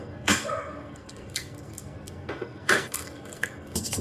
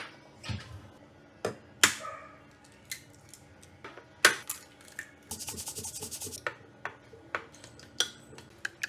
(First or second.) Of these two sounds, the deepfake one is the first